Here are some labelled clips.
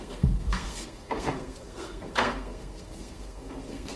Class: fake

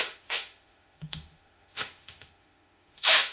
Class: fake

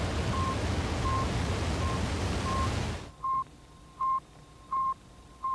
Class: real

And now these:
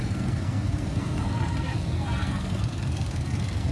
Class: fake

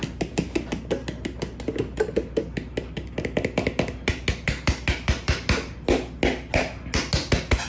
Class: real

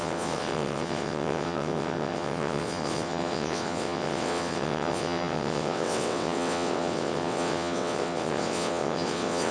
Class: fake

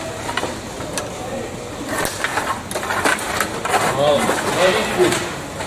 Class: real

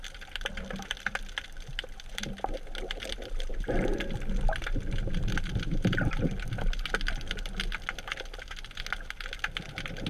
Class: real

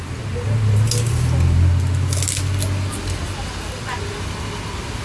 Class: real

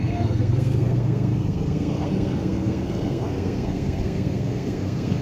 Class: fake